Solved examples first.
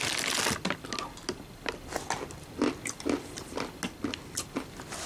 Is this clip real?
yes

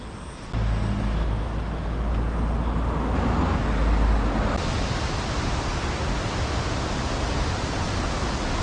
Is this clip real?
yes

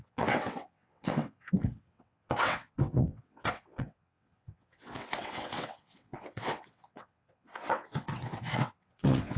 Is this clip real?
no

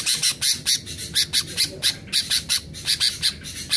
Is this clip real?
yes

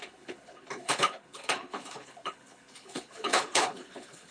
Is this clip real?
no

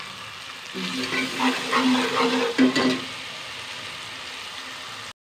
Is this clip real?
yes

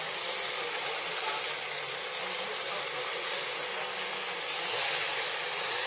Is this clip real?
yes